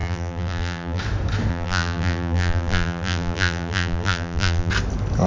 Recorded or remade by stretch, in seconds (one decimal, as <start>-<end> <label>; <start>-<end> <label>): 0.0-1.0 remade; 1.0-1.5 recorded; 1.5-4.7 remade; 4.7-5.3 recorded